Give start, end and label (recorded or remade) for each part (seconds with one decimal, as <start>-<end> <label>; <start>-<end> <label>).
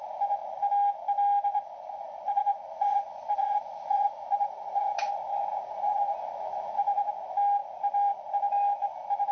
0.0-1.5 recorded; 1.5-5.1 remade; 5.1-5.5 recorded; 5.5-7.1 remade; 7.1-9.3 recorded